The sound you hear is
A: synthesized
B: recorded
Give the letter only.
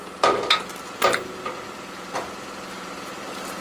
B